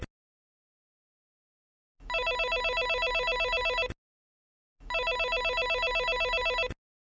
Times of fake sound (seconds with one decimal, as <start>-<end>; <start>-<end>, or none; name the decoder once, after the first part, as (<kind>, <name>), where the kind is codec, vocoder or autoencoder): none